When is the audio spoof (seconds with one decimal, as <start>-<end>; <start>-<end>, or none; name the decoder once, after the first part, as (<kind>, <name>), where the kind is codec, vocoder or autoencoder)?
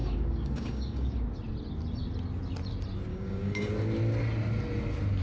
0.0-1.2 (codec, DAC); 3.1-3.7